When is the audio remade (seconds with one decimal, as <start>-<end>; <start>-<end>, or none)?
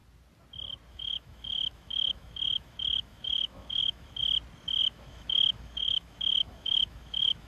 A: 0.9-4.2; 4.8-7.5